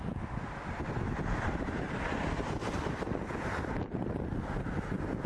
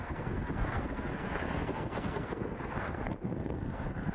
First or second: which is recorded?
first